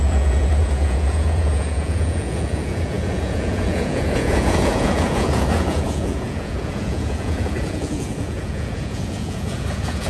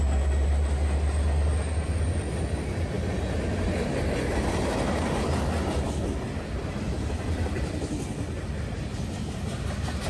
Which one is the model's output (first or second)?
first